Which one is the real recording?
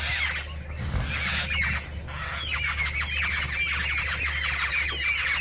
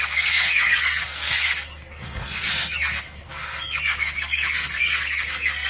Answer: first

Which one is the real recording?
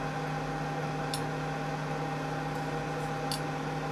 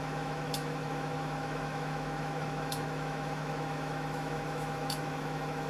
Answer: first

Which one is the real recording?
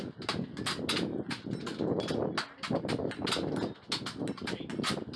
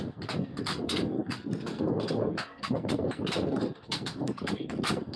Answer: first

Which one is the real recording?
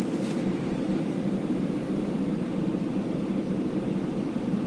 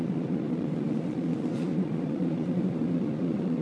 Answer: first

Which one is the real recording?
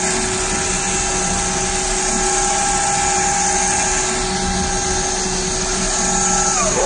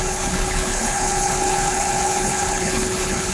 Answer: first